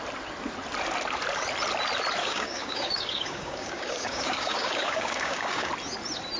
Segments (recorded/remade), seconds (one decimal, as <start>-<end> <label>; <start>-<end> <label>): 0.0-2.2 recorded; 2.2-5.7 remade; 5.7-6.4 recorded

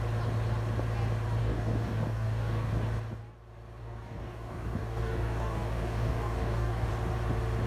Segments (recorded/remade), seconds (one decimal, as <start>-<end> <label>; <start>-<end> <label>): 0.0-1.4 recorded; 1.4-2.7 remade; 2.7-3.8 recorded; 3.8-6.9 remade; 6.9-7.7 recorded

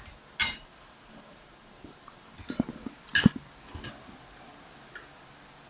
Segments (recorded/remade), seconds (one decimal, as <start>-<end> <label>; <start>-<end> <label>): 0.0-0.4 recorded; 0.4-2.4 remade; 2.4-5.7 recorded

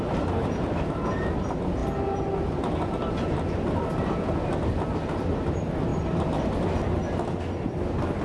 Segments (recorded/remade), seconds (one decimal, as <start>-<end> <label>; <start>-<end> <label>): 0.0-8.2 recorded